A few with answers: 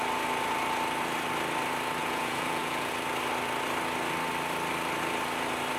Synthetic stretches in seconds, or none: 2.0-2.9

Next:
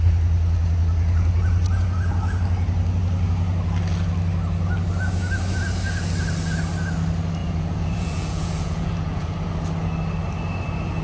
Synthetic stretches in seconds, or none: 7.4-9.3

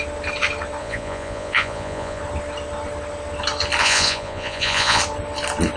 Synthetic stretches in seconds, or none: 0.8-2.2; 3.8-5.0

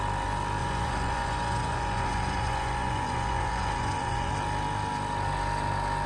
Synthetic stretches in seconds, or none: 0.6-4.3

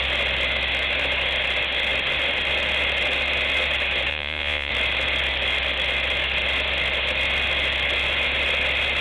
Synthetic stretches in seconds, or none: 4.1-4.7

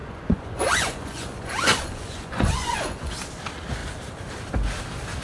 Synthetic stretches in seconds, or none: 0.0-3.1

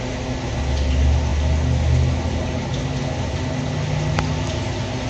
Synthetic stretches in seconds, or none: none

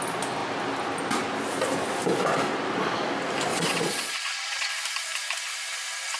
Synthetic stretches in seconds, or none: 3.5-4.7